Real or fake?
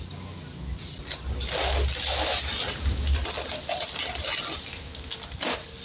real